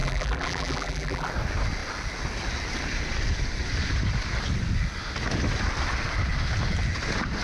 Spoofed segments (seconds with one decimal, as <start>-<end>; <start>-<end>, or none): 0.0-1.3